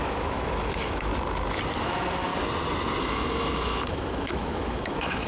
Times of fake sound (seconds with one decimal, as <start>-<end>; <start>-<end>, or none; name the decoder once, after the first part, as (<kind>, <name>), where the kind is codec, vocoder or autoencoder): 0.0-1.1 (autoencoder, DAC-VAE); 1.8-2.3; 3.0-5.3